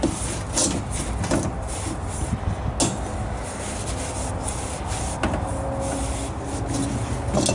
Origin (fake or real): real